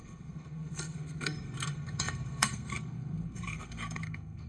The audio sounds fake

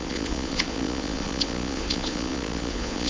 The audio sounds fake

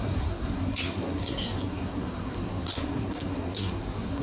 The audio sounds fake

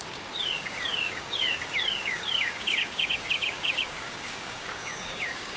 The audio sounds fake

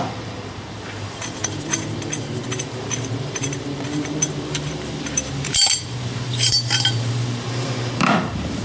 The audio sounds fake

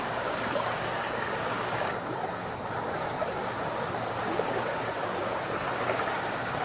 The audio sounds fake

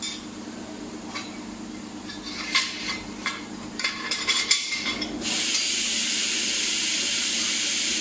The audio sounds fake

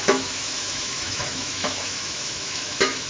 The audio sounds fake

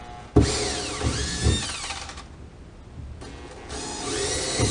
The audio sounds real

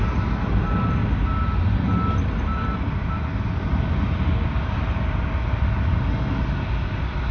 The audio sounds real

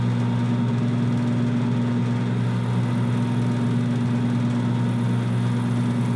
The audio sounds real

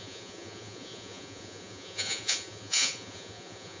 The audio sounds fake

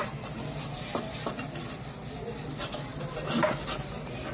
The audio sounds real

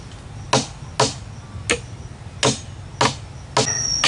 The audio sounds real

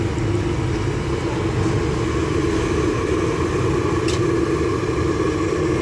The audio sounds real